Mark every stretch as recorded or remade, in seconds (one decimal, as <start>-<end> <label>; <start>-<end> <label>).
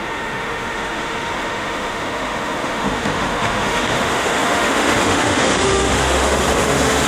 0.0-7.1 remade